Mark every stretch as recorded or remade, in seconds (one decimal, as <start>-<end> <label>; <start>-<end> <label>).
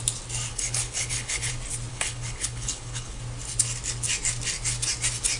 0.0-0.5 recorded; 0.5-1.5 remade; 1.5-1.9 recorded; 1.9-3.2 remade; 3.2-5.4 recorded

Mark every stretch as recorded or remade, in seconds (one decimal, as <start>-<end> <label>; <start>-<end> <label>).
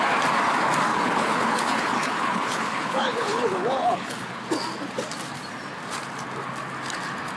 0.0-0.9 recorded; 0.9-4.4 remade; 4.4-7.4 recorded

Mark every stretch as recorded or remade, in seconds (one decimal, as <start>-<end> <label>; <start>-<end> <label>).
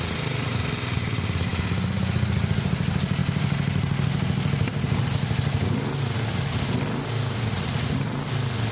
0.0-8.7 recorded